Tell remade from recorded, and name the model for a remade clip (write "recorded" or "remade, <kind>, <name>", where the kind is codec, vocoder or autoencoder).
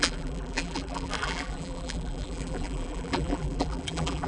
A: remade, vocoder, BigVGAN v2